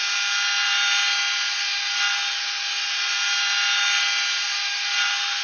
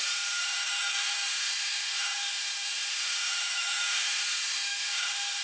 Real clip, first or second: first